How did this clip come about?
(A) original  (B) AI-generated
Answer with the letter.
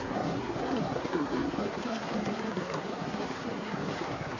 B